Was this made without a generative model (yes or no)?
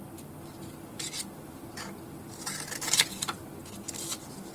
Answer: yes